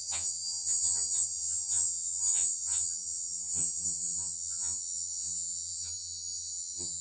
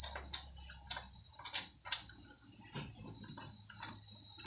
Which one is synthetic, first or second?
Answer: first